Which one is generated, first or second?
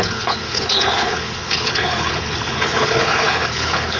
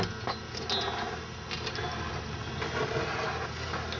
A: first